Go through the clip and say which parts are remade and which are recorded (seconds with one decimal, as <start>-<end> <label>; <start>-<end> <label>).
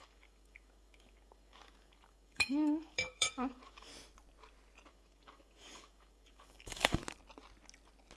0.0-3.9 remade; 3.9-4.9 recorded; 4.9-7.0 remade; 7.0-8.2 recorded